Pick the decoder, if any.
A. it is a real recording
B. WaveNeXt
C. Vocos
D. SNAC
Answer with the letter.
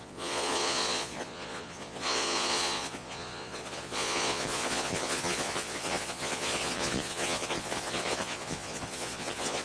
C